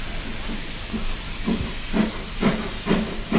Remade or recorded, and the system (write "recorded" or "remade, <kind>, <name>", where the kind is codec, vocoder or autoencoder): recorded